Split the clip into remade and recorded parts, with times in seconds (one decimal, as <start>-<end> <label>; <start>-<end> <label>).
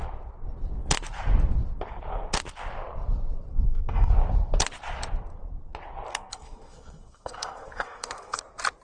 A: 0.0-3.5 recorded; 3.5-4.1 remade; 4.1-6.1 recorded; 6.1-8.4 remade; 8.4-8.8 recorded